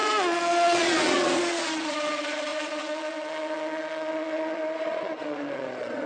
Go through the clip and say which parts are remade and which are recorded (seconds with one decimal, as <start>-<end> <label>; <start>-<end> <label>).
0.0-6.1 remade